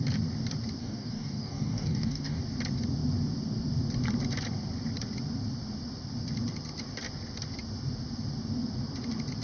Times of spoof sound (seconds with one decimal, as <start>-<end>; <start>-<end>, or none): 0.8-2.4